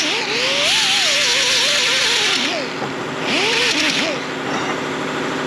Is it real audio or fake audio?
real